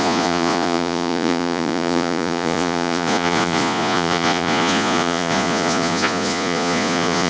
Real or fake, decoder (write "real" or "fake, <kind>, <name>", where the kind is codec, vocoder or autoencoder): fake, vocoder, Vocos